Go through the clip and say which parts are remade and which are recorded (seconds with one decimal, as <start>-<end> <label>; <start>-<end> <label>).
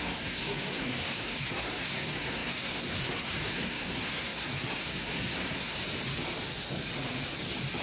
0.0-5.8 remade; 5.8-7.8 recorded